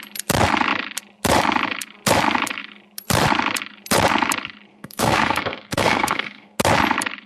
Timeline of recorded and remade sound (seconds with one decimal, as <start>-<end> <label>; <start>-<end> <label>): 0.0-4.7 recorded; 4.7-6.6 remade; 6.6-7.3 recorded